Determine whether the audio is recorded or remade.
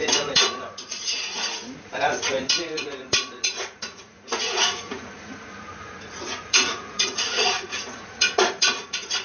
remade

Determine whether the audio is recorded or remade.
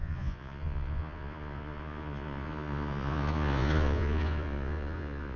remade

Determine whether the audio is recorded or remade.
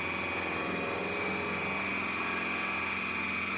recorded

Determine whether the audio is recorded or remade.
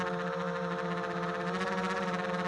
recorded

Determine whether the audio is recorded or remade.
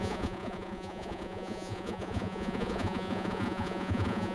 remade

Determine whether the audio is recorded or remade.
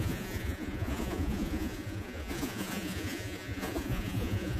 remade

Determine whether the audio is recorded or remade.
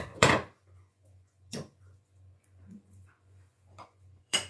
remade